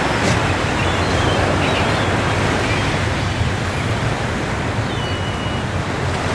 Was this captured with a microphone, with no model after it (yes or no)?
yes